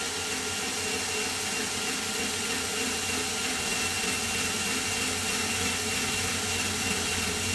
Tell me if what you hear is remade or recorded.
recorded